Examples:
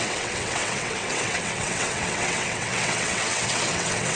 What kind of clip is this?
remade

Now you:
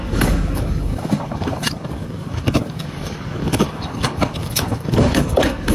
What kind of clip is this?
remade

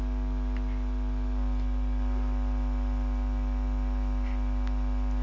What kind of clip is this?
recorded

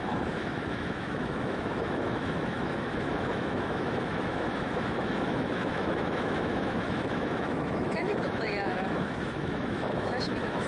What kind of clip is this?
remade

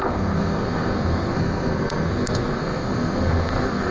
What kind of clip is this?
remade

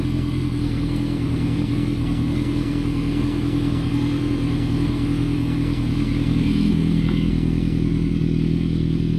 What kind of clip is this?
remade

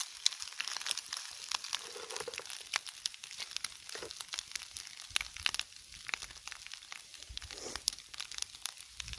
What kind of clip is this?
recorded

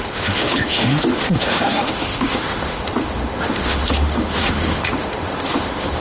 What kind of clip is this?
remade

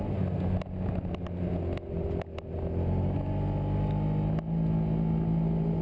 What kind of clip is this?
recorded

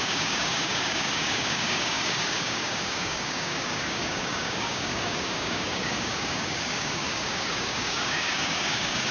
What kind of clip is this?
remade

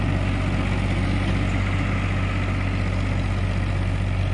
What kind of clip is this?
recorded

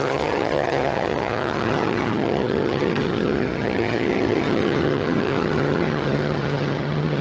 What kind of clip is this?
remade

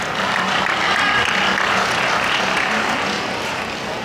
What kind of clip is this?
recorded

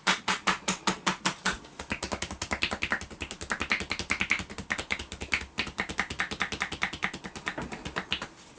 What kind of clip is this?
recorded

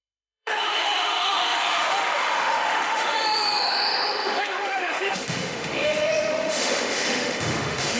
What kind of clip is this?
remade